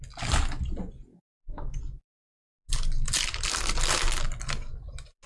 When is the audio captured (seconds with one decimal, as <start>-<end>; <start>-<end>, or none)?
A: 0.0-1.1; 1.8-5.3